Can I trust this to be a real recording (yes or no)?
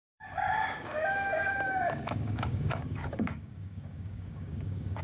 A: no